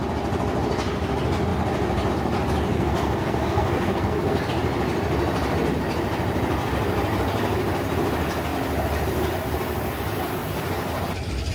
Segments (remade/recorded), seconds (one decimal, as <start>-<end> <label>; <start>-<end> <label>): 0.0-2.7 recorded; 2.7-4.4 remade; 4.4-11.5 recorded